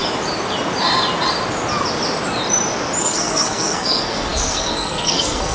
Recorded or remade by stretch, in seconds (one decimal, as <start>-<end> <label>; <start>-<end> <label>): 0.0-3.0 recorded; 3.0-5.5 remade